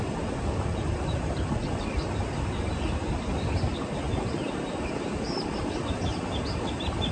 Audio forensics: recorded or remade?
recorded